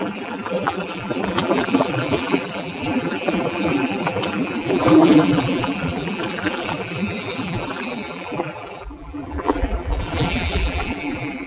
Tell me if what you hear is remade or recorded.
remade